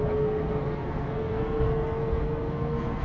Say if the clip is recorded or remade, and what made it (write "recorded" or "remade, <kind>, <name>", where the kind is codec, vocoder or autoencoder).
remade, codec, SNAC